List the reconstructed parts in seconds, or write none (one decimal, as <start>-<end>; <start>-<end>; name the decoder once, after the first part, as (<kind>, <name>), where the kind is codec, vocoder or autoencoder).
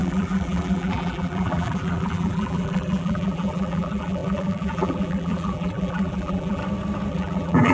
0.0-6.6 (vocoder, BigVGAN v2); 7.1-7.7